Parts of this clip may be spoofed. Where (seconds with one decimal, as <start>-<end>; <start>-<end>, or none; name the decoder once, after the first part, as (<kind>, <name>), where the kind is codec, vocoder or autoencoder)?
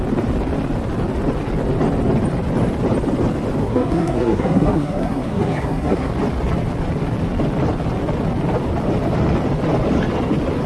3.6-6.1 (codec, SNAC)